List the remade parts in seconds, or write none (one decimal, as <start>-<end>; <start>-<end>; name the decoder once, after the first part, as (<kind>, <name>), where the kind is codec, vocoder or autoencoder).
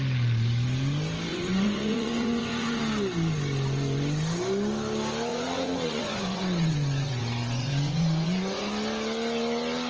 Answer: 1.3-2.8 (vocoder, Vocos); 5.3-8.6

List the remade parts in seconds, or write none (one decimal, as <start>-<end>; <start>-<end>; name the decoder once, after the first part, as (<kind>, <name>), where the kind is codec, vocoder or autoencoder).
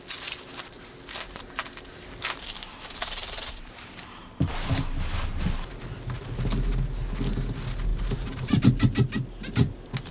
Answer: 3.2-3.9 (vocoder, BigVGAN v2); 7.9-8.6